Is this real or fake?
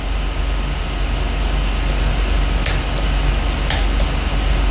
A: real